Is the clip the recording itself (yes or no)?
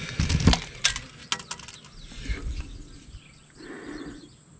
yes